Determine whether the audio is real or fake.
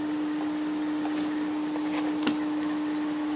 real